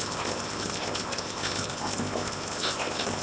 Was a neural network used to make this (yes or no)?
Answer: yes